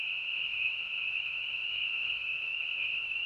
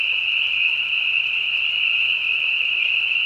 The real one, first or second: second